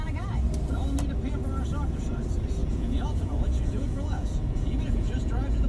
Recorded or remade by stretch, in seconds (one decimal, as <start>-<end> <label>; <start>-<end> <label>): 0.0-2.6 recorded; 2.6-5.7 remade